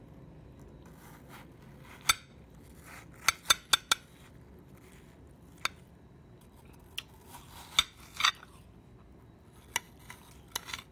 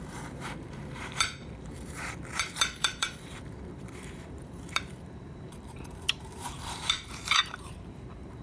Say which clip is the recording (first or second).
first